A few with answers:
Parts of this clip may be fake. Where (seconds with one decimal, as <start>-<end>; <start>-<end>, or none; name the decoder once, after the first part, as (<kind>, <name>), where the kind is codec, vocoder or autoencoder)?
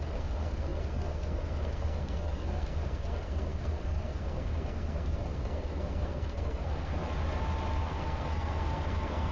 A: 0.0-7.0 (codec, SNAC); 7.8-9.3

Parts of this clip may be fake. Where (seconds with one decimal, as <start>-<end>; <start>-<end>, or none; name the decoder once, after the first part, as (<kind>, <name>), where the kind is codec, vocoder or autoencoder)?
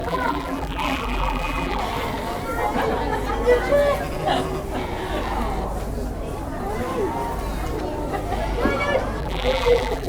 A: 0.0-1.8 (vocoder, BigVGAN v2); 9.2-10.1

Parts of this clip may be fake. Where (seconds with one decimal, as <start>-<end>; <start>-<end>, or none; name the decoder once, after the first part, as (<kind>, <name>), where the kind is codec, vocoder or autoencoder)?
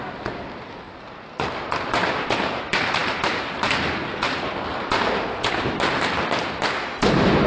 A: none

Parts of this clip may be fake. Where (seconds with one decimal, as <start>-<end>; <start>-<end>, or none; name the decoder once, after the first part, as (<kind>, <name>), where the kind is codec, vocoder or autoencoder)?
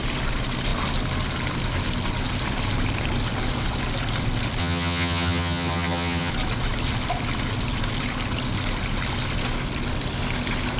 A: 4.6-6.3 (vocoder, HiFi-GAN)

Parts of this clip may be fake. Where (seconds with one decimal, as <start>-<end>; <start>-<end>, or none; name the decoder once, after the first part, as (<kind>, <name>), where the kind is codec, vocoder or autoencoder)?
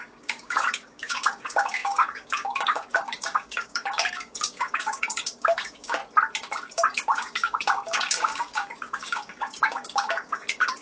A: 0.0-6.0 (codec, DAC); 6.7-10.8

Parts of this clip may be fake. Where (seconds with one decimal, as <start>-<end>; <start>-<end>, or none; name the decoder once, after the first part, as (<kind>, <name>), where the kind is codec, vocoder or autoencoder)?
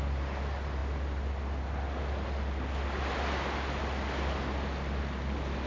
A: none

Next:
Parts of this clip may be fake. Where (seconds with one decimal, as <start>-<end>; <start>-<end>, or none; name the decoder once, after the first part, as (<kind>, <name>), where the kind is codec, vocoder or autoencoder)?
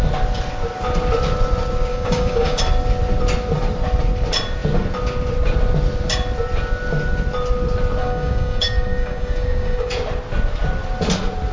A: 1.9-2.6 (codec, DAC); 8.0-9.9